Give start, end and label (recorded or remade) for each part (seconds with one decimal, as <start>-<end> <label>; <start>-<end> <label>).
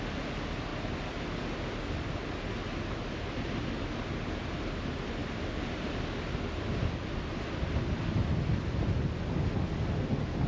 0.0-10.5 recorded